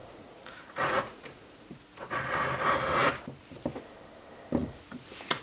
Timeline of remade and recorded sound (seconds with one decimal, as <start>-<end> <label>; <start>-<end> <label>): 0.0-2.2 remade; 2.2-4.6 recorded; 4.6-5.4 remade